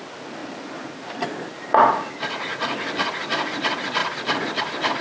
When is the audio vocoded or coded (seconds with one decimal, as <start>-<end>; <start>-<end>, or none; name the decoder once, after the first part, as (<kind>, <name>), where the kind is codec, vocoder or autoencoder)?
0.4-2.1 (vocoder, BigVGAN v2); 4.0-4.6